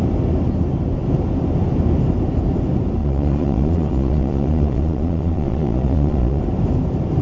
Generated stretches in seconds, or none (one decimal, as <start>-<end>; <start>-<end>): 3.0-6.4